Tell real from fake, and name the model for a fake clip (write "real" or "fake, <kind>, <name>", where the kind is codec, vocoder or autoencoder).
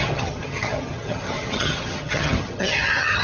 fake, vocoder, HiFi-GAN